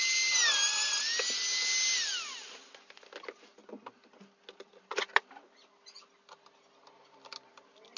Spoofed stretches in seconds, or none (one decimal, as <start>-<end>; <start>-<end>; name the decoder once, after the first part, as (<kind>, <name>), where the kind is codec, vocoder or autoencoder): none